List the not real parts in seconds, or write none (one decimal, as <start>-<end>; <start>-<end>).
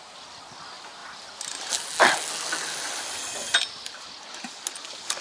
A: none